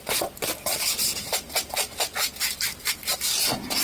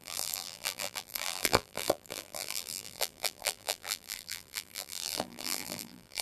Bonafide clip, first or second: first